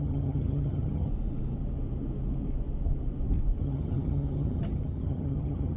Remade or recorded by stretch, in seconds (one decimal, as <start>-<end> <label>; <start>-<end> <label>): 0.0-1.1 remade; 1.1-3.6 recorded; 3.6-5.8 remade